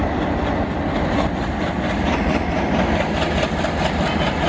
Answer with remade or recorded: recorded